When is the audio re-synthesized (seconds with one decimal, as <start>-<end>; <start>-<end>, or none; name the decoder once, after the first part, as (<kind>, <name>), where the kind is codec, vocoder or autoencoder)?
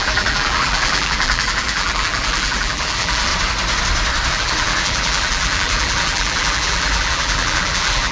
0.0-3.3 (vocoder, BigVGAN v2); 4.3-8.1